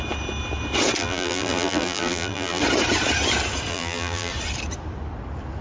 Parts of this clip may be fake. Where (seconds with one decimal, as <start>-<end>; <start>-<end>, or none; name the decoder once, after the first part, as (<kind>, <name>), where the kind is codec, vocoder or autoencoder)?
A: 1.0-2.6 (vocoder, BigVGAN v2); 3.7-4.3